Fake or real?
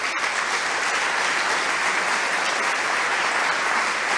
real